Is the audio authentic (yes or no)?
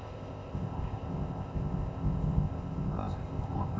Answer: no